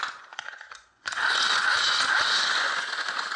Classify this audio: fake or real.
fake